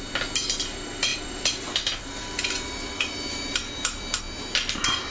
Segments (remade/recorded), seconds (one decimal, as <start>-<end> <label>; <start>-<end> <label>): 0.0-1.1 recorded; 1.1-4.2 remade; 4.2-5.1 recorded